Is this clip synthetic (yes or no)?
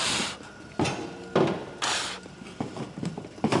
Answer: no